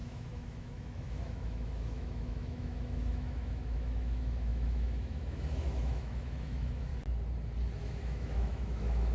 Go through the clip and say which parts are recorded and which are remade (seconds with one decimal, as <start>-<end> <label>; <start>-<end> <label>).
0.0-6.9 remade; 6.9-7.8 recorded; 7.8-9.1 remade